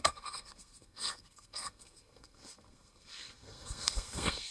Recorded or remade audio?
remade